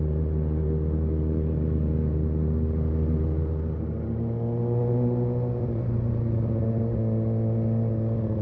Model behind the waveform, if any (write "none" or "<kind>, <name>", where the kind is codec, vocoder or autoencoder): none